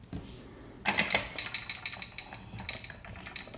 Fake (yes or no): no